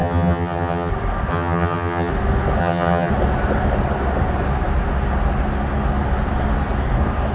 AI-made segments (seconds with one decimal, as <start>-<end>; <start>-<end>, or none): 0.0-0.9; 1.3-2.1; 2.6-3.1